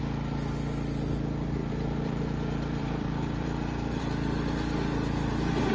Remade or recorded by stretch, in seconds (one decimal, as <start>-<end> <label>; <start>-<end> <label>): 0.0-1.6 recorded; 1.6-4.0 remade; 4.0-5.7 recorded

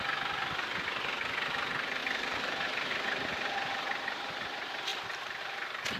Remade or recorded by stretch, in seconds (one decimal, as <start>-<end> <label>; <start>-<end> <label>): 0.0-2.0 recorded; 2.0-2.9 remade; 2.9-6.0 recorded

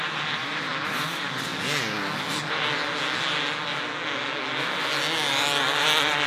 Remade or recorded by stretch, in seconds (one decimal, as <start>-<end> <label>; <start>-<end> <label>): 0.0-1.5 remade; 1.5-5.3 recorded; 5.3-6.3 remade

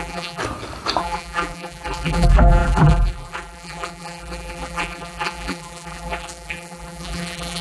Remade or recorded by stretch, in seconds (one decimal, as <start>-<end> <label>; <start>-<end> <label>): 0.0-0.4 remade; 0.4-1.0 recorded; 1.0-7.6 remade

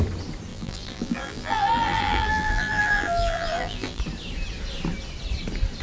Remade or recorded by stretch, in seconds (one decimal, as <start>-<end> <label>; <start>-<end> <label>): 0.0-0.5 recorded; 0.5-4.0 remade; 4.0-5.8 recorded